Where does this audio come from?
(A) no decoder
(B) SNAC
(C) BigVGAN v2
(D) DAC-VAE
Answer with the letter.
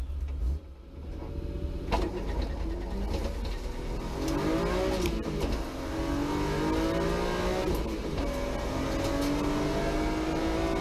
A